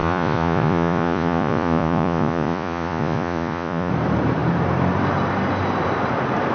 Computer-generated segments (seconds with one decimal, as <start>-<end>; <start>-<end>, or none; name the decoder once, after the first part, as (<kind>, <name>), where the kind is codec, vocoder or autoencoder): 0.0-3.9 (vocoder, Vocos)